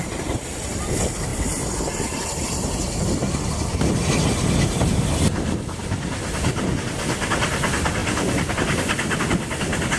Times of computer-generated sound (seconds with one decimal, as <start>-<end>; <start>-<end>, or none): none

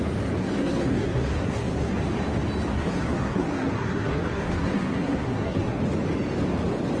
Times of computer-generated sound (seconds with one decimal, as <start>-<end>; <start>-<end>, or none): 0.4-1.9; 2.7-5.8

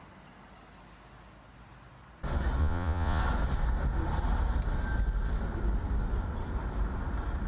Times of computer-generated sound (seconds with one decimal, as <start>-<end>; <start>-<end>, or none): 2.6-3.2

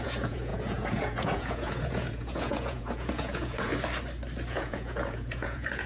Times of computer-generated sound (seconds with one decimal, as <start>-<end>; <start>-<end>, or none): 0.0-3.7; 4.5-5.9